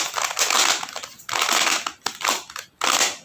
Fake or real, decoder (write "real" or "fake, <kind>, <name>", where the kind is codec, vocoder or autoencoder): real